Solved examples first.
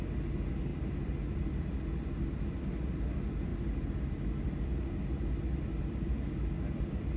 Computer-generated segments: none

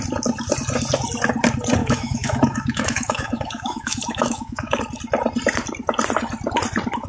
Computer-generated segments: 1.8-4.8 (autoencoder, DAC-VAE)

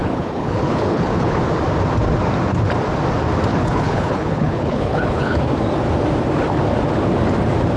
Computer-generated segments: 0.0-1.4 (codec, HILCodec); 3.5-5.4

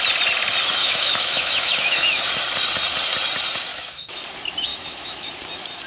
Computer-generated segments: 0.8-2.3 (autoencoder, DAC-VAE); 3.7-4.2; 4.7-5.3

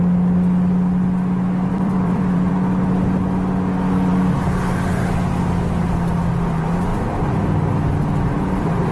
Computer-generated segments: 1.7-2.5 (vocoder, BigVGAN v2); 6.9-7.7